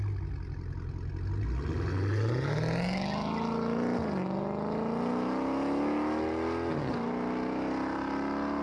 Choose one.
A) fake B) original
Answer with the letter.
B